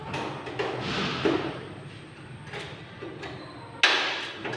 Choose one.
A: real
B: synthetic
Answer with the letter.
A